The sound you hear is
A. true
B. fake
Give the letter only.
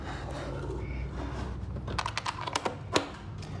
A